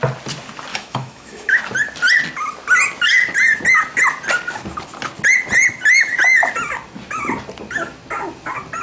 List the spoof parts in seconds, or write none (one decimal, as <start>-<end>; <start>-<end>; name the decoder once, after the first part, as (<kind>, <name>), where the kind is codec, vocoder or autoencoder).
0.7-1.6 (autoencoder, DAC-VAE)

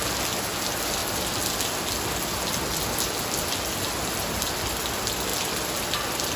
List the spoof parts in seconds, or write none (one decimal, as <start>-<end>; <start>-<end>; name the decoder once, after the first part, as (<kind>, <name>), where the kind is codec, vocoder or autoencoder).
none